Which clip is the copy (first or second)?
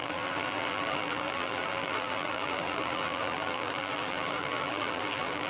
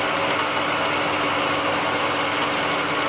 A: first